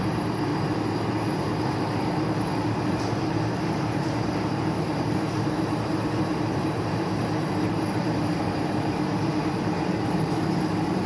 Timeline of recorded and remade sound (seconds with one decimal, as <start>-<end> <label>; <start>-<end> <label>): 0.0-0.5 remade; 0.5-1.6 recorded; 1.6-11.1 remade